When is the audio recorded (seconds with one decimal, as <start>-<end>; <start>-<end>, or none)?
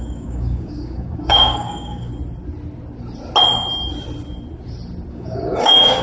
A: 2.1-5.1